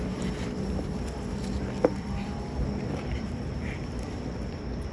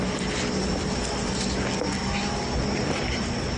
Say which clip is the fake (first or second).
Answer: first